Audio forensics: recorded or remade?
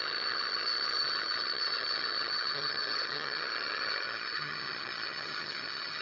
remade